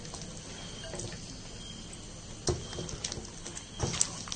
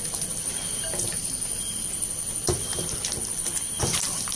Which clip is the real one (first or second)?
first